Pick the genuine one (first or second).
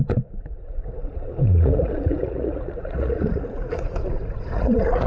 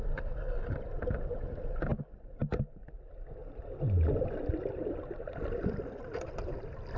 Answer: second